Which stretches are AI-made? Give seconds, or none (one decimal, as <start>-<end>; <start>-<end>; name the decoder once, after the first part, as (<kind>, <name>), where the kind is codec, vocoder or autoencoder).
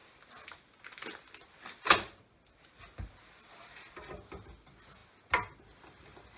none